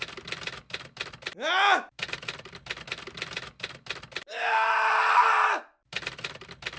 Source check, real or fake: real